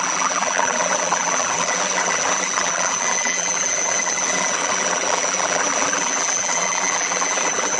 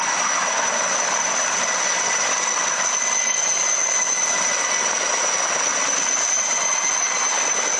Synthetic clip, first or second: first